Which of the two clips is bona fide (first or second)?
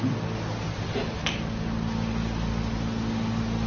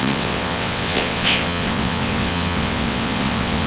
first